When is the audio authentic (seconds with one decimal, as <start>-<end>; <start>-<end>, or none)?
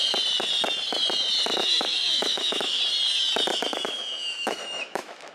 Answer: 0.0-1.6; 2.8-3.5